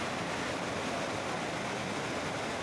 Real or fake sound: real